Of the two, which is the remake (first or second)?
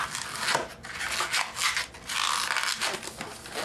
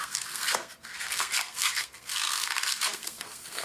second